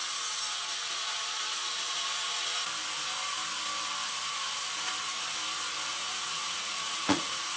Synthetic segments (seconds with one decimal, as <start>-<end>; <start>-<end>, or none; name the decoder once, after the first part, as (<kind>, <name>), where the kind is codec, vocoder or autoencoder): 0.0-2.7 (vocoder, Vocos); 5.9-7.6